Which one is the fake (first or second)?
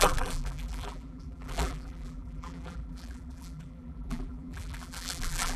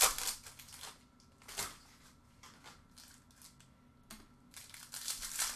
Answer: first